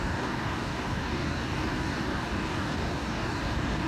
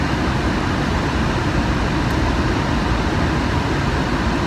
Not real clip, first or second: first